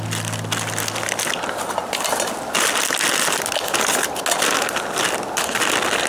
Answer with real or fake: real